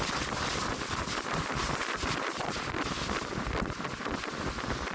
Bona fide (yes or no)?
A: yes